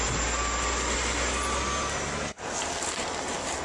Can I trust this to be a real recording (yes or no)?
yes